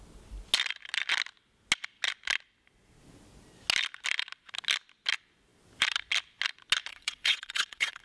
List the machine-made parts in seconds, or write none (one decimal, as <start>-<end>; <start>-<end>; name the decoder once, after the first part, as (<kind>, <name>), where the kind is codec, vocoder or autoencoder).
6.9-8.0 (vocoder, WaveNeXt)